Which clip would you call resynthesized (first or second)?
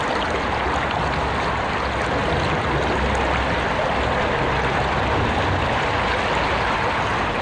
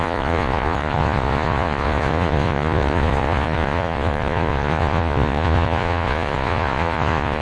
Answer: second